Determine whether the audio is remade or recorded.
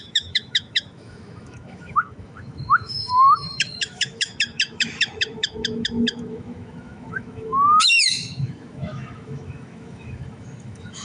remade